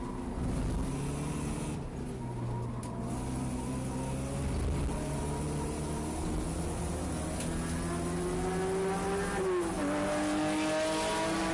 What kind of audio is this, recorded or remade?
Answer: recorded